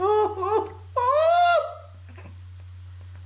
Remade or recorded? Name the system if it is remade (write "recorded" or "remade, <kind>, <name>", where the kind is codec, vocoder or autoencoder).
recorded